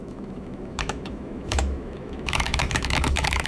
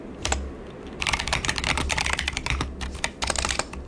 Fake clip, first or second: first